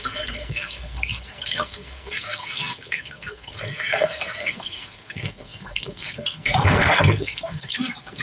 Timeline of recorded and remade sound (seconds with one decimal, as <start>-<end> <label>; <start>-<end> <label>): 0.0-8.2 remade